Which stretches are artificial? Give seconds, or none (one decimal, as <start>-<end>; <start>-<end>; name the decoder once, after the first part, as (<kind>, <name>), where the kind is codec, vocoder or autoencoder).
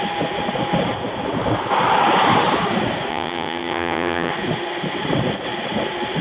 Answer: 3.1-4.3 (vocoder, HiFi-GAN)